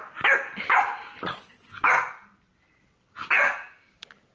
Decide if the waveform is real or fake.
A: real